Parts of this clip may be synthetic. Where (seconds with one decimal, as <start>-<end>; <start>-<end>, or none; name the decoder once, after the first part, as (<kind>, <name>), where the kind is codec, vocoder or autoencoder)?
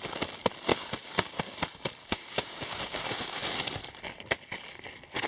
0.7-1.4 (codec, DAC); 2.0-3.4